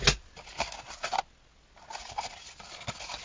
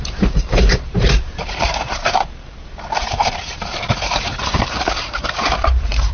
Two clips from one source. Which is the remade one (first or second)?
second